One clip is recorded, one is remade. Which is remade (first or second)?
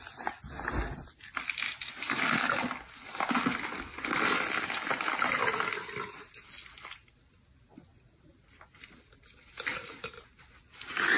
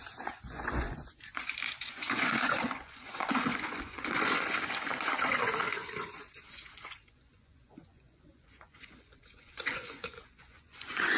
second